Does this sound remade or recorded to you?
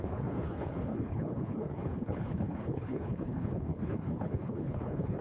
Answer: remade